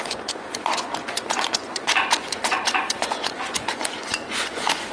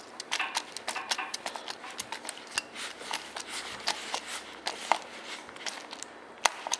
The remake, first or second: first